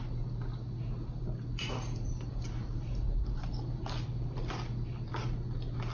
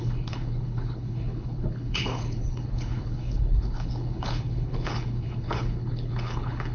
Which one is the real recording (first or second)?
first